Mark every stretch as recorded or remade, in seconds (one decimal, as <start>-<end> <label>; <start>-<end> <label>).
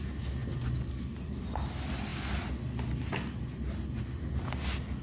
0.0-5.0 recorded